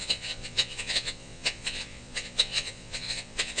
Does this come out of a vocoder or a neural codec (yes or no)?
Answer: yes